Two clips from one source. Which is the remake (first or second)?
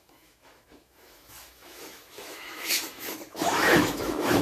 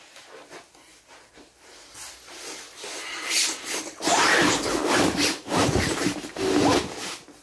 first